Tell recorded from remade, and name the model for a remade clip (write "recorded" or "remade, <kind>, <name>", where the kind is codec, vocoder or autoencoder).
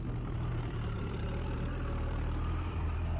remade, vocoder, BigVGAN v2